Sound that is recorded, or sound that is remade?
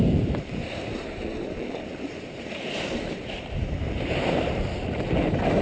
remade